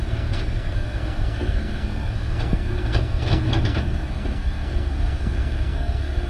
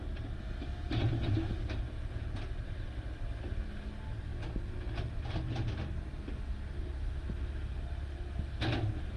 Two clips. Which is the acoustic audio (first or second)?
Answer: second